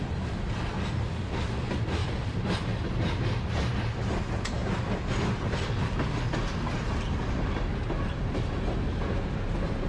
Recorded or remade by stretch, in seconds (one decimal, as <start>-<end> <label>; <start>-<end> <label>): 0.0-2.0 recorded; 2.0-3.7 remade; 3.7-9.9 recorded